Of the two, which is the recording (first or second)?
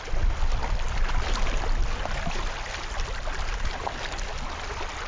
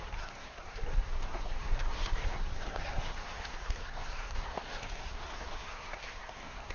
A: first